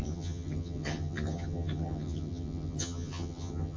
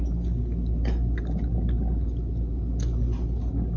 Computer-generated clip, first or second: first